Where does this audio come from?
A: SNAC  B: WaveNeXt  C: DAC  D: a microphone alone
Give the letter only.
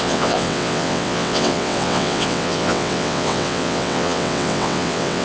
B